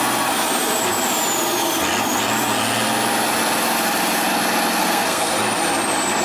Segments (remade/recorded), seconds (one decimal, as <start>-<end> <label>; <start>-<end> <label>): 0.0-4.8 recorded; 4.8-5.3 remade; 5.3-6.2 recorded